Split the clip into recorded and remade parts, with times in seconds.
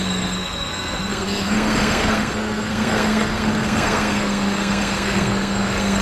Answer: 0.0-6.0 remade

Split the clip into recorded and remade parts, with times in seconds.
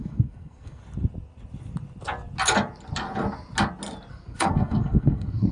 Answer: 0.0-0.8 remade; 0.8-4.1 recorded; 4.1-5.5 remade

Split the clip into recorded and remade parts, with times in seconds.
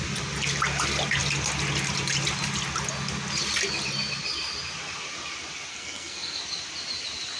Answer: 0.0-5.7 recorded; 5.7-6.4 remade; 6.4-7.4 recorded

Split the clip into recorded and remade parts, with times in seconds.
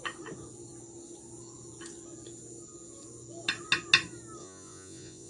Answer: 0.0-4.4 recorded; 4.4-5.3 remade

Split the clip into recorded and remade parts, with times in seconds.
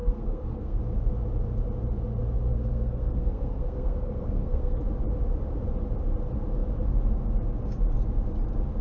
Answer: 0.0-0.8 remade; 0.8-2.5 recorded; 2.5-4.8 remade; 4.8-8.8 recorded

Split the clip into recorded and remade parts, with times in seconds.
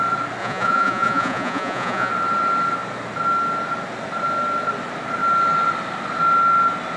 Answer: 0.0-0.4 recorded; 0.4-2.1 remade; 2.1-7.0 recorded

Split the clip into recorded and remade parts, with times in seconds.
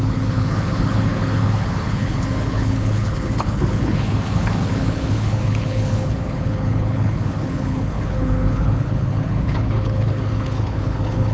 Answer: 0.0-11.3 remade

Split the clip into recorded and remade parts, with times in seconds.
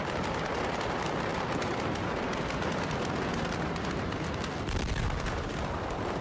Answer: 0.0-1.3 remade; 1.3-5.0 recorded; 5.0-6.2 remade